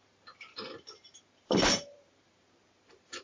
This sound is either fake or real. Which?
fake